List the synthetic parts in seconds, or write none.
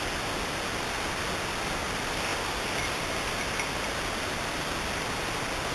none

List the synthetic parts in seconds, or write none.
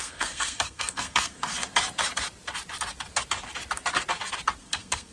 0.0-1.5 (codec, SNAC); 4.6-5.1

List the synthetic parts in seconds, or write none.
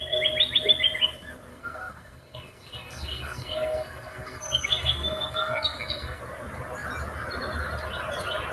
1.5-6.2 (codec, SNAC)